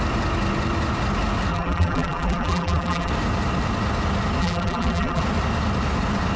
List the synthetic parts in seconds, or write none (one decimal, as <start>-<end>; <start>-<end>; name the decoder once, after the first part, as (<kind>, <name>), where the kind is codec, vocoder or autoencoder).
1.5-3.1 (vocoder, BigVGAN v2); 4.4-5.2

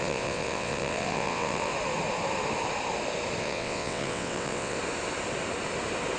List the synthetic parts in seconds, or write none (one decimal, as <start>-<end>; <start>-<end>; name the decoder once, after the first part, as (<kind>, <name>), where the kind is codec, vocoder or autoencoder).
0.0-1.7 (vocoder, WaveNeXt); 3.4-4.8

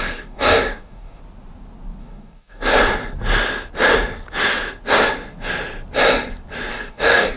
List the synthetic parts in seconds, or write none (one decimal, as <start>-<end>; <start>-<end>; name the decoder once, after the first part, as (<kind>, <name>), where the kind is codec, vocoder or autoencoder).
0.0-1.2 (codec, DAC); 2.0-2.7; 6.7-7.4

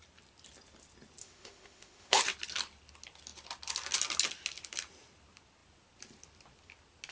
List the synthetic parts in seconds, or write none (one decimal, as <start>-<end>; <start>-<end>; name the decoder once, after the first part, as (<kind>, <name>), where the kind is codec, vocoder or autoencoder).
1.2-2.2 (autoencoder, DAC-VAE)

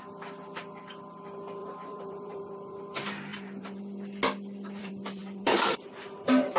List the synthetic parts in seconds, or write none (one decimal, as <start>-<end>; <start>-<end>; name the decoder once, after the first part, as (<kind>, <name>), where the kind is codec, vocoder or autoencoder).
1.6-2.8 (vocoder, BigVGAN v2); 3.3-3.8; 4.8-6.6

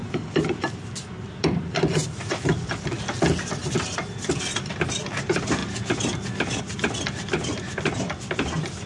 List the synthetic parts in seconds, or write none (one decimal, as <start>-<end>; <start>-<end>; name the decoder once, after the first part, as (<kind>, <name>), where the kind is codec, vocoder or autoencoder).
0.0-3.6 (vocoder, BigVGAN v2); 5.0-5.6; 6.6-8.9